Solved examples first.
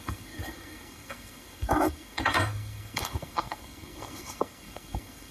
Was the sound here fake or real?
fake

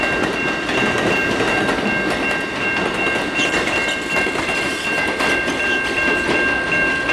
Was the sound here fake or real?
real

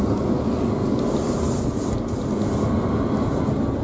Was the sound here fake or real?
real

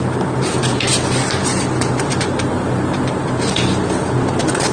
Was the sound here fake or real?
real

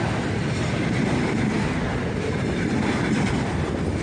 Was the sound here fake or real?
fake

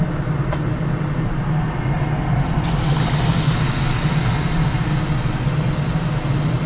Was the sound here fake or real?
real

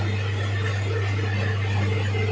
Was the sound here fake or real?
real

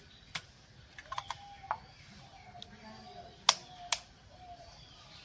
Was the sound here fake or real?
real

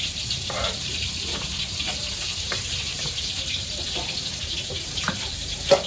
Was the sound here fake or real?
fake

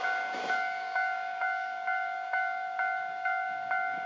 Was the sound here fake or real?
fake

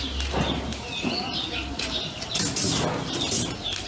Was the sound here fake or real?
real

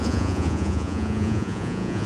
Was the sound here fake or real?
fake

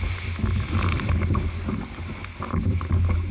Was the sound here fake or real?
real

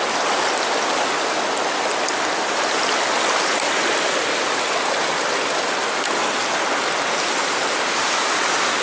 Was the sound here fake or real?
real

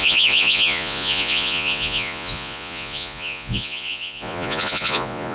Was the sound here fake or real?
fake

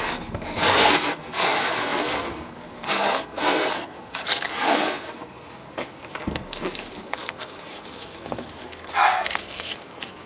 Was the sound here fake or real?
fake